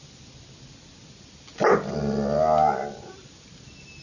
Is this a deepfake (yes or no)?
no